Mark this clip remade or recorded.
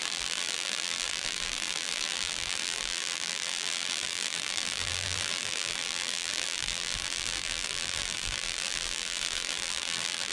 remade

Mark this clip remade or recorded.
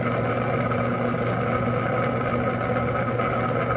recorded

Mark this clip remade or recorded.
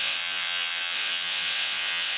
remade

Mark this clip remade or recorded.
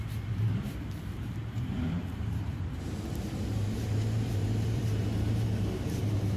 remade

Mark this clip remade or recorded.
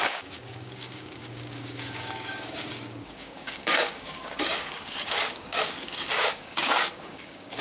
remade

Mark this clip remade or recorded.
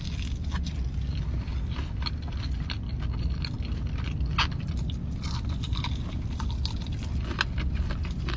recorded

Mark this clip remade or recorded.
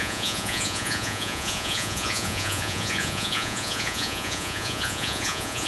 remade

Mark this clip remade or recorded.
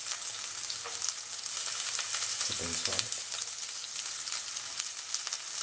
recorded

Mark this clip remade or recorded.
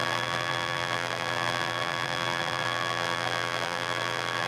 remade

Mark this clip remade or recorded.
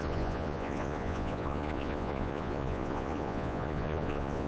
remade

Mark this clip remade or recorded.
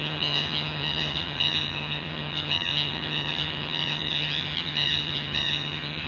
remade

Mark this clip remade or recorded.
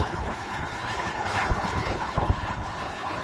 remade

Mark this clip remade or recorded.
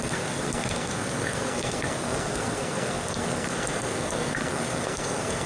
remade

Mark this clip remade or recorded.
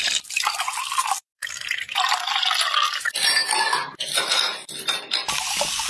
recorded